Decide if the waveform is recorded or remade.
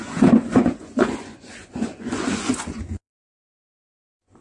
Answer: remade